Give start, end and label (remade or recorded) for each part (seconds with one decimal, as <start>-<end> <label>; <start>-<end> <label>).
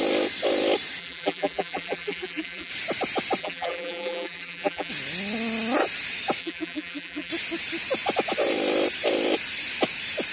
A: 0.0-1.0 recorded; 1.0-2.7 remade; 2.7-3.4 recorded; 3.4-4.9 remade; 4.9-6.4 recorded; 6.4-7.3 remade; 7.3-10.3 recorded